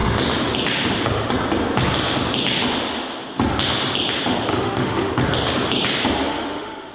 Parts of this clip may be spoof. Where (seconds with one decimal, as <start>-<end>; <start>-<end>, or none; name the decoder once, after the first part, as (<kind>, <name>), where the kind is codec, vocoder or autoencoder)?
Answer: 4.5-5.1 (autoencoder, DAC-VAE); 6.3-6.9